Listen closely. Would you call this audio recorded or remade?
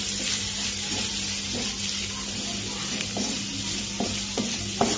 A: recorded